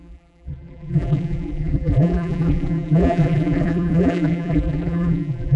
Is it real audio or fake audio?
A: fake